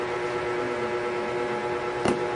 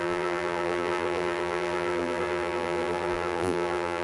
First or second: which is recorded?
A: first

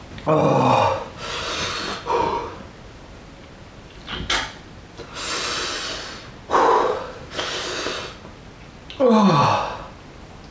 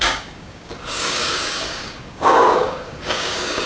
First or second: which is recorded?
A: first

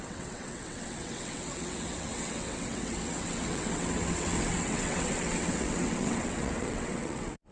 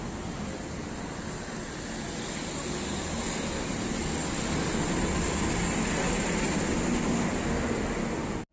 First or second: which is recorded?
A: second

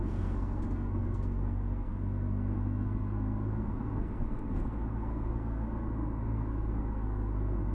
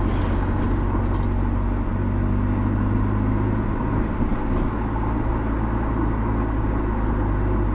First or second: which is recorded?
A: second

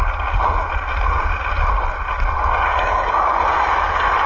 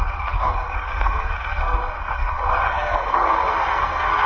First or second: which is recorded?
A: first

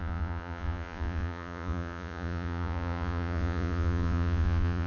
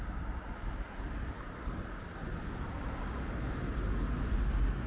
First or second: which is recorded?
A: second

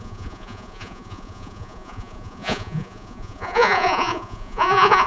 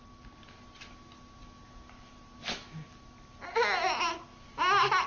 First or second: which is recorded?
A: second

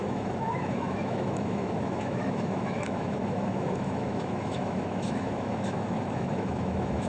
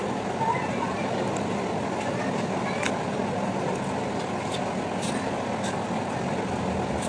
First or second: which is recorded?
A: second